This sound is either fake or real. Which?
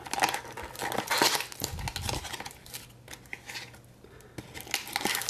real